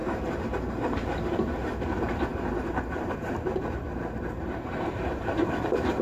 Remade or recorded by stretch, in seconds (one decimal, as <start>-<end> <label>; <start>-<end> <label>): 0.0-6.0 remade